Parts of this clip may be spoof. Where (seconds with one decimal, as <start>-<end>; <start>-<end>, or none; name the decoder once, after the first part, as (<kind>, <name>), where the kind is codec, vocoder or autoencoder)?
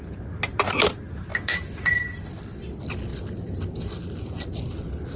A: none